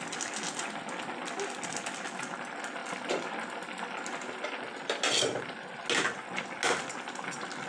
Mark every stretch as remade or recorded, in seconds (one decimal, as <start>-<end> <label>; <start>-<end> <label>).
0.0-2.8 recorded; 2.8-3.5 remade; 3.5-7.7 recorded